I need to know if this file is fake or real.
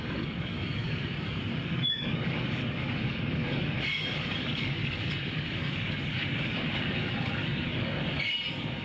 fake